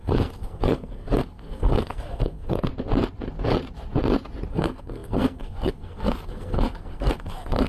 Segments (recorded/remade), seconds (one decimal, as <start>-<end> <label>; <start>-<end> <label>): 0.0-2.7 remade; 2.7-4.5 recorded; 4.5-7.7 remade